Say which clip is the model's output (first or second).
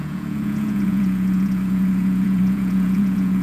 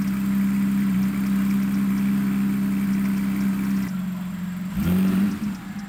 first